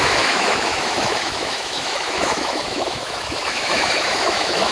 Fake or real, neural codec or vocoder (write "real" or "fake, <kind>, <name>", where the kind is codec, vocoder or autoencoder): fake, autoencoder, DAC-VAE